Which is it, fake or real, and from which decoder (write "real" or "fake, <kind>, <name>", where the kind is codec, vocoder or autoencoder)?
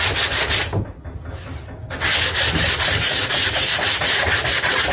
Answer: real